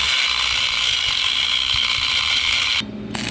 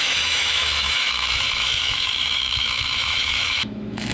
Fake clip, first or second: second